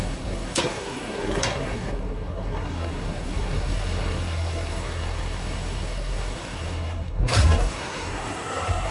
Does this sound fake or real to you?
fake